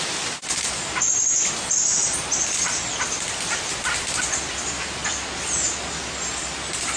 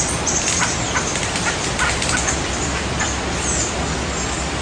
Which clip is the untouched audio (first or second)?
first